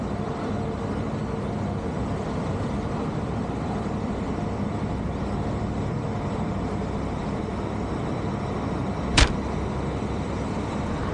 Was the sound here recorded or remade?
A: remade